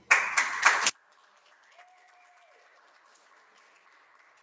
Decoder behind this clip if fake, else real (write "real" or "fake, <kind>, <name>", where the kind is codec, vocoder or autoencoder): real